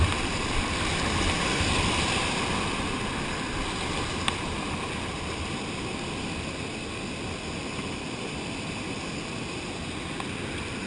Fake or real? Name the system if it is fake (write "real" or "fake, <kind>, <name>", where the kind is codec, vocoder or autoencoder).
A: real